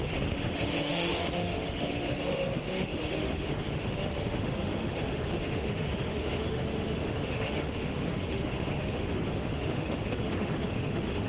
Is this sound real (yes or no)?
no